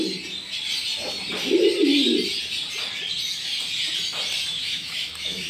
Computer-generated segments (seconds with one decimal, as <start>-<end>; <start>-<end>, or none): 4.5-5.5